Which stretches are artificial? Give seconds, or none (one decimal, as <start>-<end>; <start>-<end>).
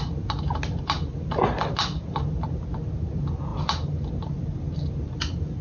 none